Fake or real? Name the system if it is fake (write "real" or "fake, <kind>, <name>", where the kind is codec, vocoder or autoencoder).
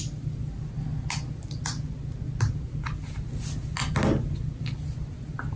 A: real